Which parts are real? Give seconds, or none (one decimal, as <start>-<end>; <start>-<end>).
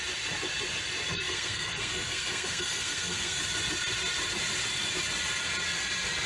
0.0-1.1; 3.4-6.3